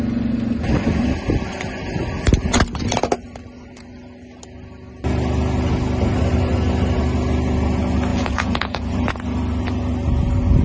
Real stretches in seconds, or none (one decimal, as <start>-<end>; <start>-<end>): 0.0-8.1; 9.1-10.6